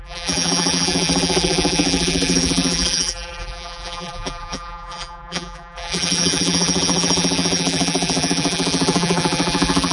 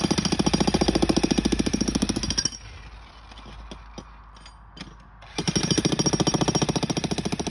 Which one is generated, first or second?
first